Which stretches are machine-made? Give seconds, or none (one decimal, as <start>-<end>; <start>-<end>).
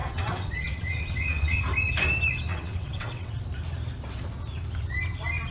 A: 0.0-1.6; 2.5-3.3